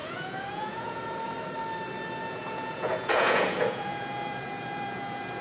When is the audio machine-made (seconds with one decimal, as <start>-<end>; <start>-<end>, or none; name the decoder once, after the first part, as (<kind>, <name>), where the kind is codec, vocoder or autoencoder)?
0.0-1.2 (vocoder, Vocos); 2.2-5.4